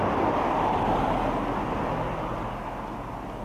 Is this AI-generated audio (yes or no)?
no